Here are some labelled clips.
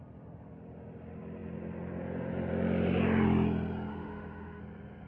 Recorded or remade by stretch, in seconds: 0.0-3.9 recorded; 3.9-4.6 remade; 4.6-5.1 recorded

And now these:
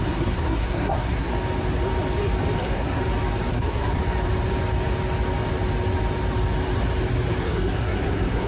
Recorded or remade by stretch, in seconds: 0.0-1.3 remade; 1.3-2.6 recorded; 2.6-3.0 remade; 3.0-3.5 recorded; 3.5-4.0 remade; 4.0-7.4 recorded; 7.4-8.5 remade

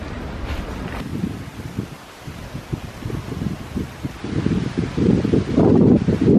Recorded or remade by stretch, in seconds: 0.0-1.1 recorded; 1.1-3.1 remade; 3.1-6.4 recorded

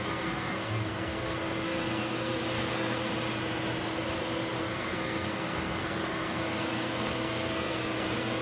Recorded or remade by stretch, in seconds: 0.0-3.1 remade; 3.1-4.6 recorded; 4.6-8.4 remade

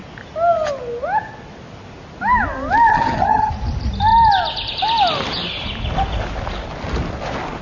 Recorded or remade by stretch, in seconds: 0.0-2.9 recorded; 2.9-3.5 remade; 3.5-7.6 recorded